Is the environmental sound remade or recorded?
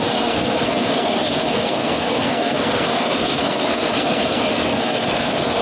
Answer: remade